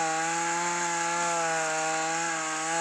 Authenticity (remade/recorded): recorded